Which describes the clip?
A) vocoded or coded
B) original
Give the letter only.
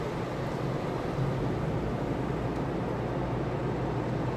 B